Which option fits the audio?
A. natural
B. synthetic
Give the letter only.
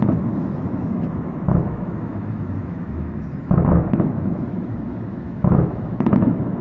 B